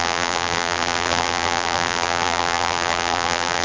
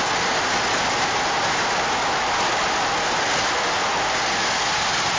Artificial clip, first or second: first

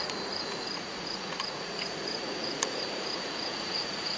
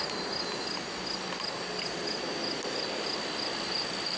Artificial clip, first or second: first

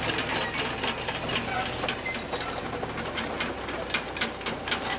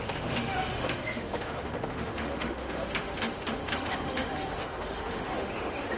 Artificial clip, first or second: second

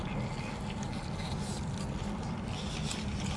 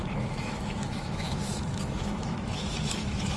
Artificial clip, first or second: second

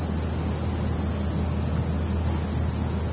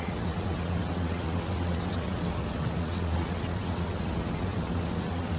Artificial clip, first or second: second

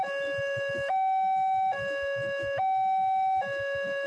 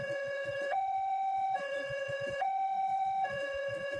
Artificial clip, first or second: second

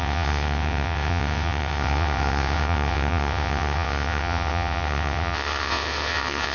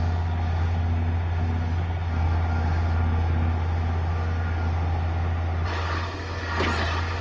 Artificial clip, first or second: first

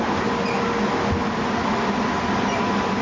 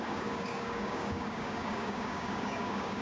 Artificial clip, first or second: second